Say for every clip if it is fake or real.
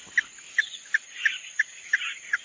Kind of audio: real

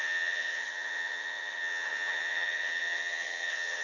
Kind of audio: fake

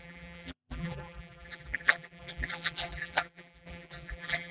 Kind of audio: fake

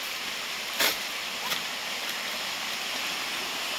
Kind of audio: real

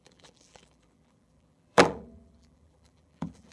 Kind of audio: fake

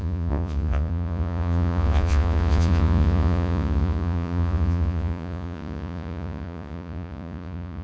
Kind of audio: fake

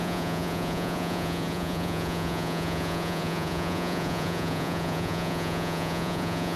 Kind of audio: fake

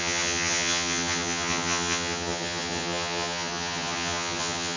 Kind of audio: fake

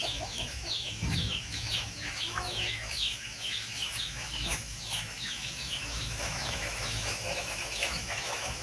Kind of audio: fake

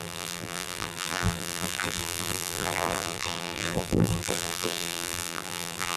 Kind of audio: fake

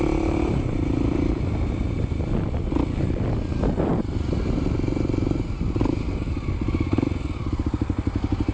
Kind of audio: real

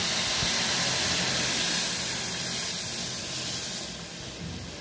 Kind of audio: real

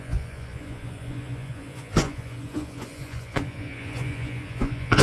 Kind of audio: fake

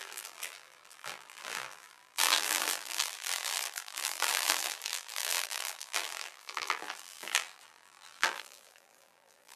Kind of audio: fake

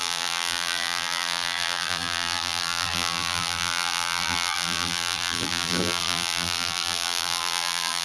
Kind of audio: fake